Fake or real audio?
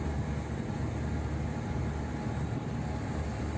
real